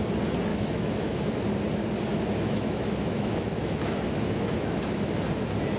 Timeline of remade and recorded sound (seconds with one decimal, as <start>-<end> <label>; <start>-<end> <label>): 0.0-0.5 recorded; 0.5-1.3 remade; 1.3-2.1 recorded; 2.1-5.1 remade; 5.1-5.8 recorded